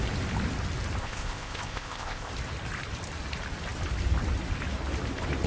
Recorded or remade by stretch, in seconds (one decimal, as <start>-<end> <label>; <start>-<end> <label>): 0.0-1.0 recorded; 1.0-2.3 remade; 2.3-5.5 recorded

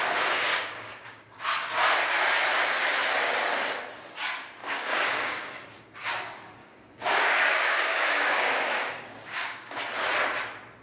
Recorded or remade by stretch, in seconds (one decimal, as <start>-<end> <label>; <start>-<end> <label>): 0.0-0.5 recorded; 0.5-1.4 remade; 1.4-4.6 recorded; 4.6-5.5 remade; 5.5-6.6 recorded; 6.6-9.8 remade; 9.8-10.8 recorded